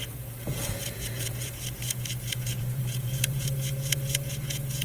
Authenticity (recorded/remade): remade